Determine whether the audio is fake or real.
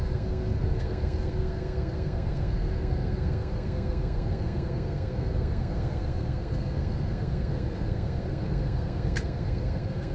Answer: fake